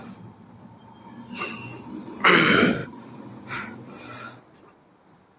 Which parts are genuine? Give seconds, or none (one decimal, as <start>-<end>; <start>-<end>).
0.8-2.8; 3.6-5.4